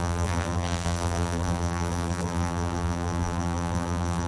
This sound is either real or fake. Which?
fake